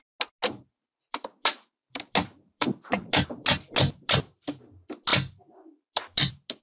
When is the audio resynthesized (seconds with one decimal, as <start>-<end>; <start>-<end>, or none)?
none

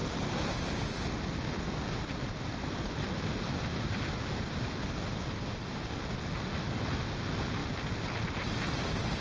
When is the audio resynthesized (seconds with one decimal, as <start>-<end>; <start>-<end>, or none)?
none

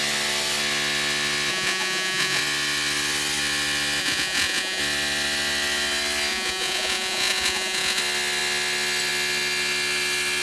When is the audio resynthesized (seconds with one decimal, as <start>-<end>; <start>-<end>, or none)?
1.5-2.4; 4.0-4.8; 6.3-8.0

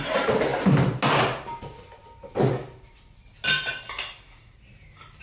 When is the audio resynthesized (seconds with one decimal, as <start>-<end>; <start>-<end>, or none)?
none

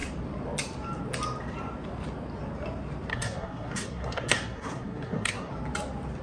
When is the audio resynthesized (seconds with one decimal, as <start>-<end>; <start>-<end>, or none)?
3.1-5.5

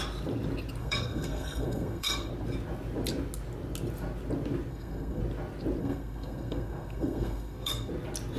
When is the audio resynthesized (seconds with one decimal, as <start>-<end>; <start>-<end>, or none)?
0.8-2.3; 4.7-5.2; 5.8-7.9

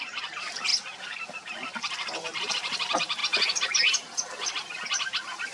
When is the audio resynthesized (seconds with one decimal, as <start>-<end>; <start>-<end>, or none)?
0.0-0.7; 1.8-3.2; 4.5-5.5

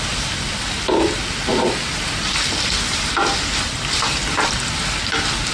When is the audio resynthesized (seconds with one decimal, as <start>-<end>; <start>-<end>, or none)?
0.0-5.5